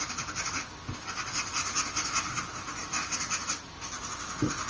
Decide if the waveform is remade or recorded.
recorded